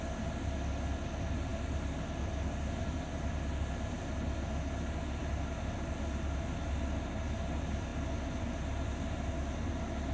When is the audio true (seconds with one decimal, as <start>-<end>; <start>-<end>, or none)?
0.0-10.1